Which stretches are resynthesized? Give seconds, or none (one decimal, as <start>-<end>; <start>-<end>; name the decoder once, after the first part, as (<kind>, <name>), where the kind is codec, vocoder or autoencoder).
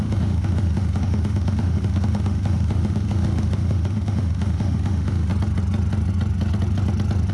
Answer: 0.0-5.3 (autoencoder, DAC-VAE)